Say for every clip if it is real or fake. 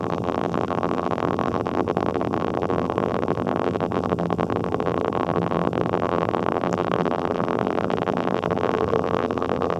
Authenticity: fake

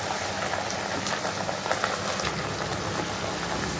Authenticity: real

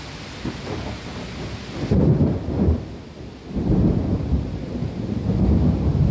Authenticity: real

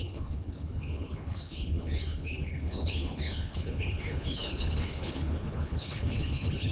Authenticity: fake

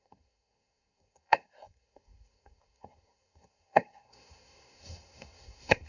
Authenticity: fake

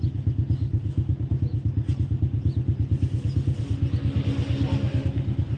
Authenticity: real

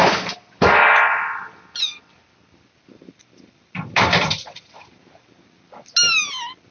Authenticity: real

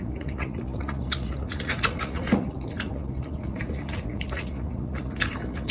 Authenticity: fake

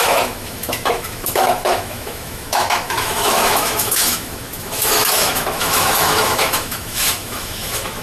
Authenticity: fake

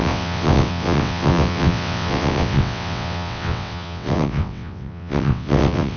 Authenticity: fake